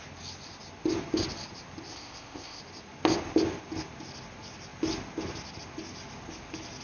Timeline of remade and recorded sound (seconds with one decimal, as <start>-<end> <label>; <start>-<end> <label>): 0.0-1.9 recorded; 1.9-2.6 remade; 2.6-6.8 recorded